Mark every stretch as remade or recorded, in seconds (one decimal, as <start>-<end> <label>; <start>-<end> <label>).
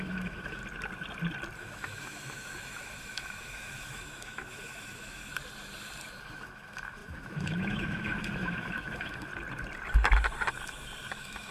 0.0-0.6 remade; 0.6-1.6 recorded; 1.6-5.2 remade; 5.2-6.2 recorded; 6.2-9.3 remade; 9.3-11.1 recorded; 11.1-11.5 remade